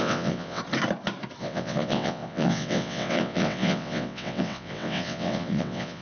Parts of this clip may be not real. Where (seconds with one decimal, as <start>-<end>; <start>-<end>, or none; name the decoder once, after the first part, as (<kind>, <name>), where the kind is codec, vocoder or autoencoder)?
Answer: 0.0-0.6 (vocoder, WaveNeXt); 1.4-6.0

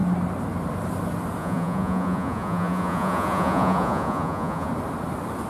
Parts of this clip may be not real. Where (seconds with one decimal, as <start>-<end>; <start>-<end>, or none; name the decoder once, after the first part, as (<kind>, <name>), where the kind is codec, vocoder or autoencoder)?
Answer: 1.4-4.7 (vocoder, Vocos)

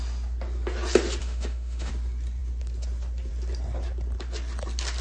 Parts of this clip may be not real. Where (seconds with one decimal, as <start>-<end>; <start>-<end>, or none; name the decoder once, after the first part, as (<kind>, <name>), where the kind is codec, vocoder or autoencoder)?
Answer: 1.2-1.9 (autoencoder, DAC-VAE)